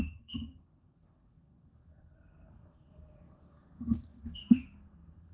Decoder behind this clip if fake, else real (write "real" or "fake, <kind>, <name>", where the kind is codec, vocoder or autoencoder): fake, codec, SNAC